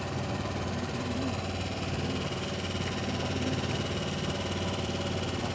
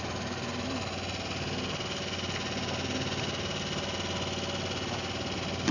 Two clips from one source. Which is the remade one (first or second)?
first